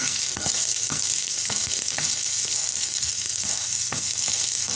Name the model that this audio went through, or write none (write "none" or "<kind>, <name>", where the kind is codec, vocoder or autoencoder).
codec, SNAC